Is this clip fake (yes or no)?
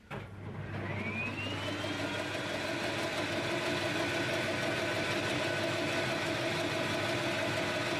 no